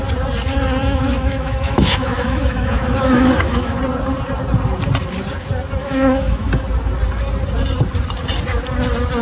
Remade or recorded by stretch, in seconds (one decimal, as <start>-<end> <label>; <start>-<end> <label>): 0.0-0.8 recorded; 0.8-3.8 remade; 3.8-5.8 recorded; 5.8-6.5 remade; 6.5-9.2 recorded